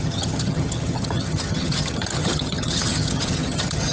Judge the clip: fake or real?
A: fake